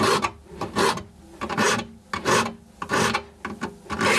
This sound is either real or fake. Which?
real